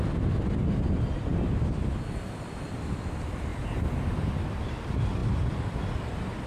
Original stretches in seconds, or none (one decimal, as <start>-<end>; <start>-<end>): 0.0-6.5